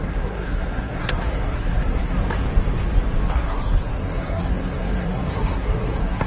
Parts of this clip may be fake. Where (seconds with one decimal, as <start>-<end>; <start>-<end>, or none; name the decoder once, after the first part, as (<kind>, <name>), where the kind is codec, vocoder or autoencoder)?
0.0-2.2 (codec, SNAC); 3.3-6.3